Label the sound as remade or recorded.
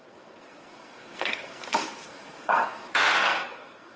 remade